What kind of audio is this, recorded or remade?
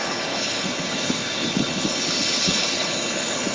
remade